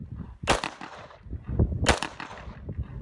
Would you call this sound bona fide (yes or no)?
yes